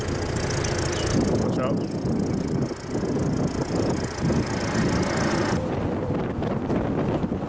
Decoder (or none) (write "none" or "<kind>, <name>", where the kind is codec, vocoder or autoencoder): none